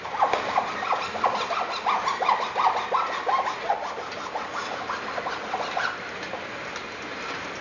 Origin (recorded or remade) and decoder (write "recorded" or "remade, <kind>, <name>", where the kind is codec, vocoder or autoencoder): recorded